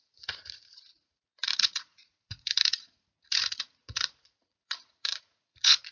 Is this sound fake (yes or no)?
yes